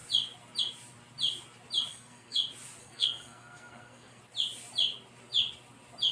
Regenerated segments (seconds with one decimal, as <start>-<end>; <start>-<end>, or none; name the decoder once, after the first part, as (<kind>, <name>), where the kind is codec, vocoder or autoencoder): 1.9-2.4 (codec, SNAC); 2.8-4.2